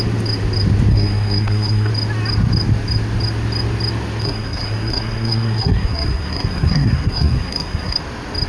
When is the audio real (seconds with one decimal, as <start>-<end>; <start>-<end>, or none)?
0.0-0.9; 1.9-4.2; 8.0-8.5